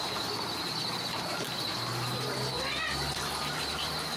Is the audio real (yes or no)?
yes